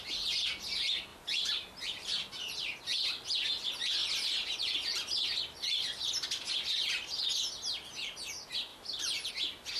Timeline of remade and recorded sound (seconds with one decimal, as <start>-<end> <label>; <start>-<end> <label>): 0.0-1.1 recorded; 1.1-2.8 remade; 2.8-8.7 recorded; 8.7-9.3 remade; 9.3-9.8 recorded